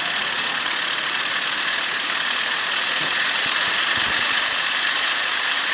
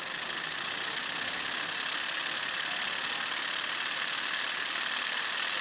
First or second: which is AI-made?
first